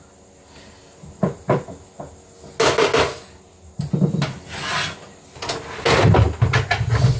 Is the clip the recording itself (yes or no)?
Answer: yes